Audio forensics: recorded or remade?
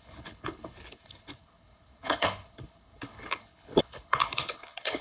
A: remade